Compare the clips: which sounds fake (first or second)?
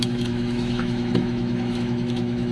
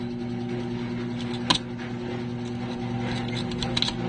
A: first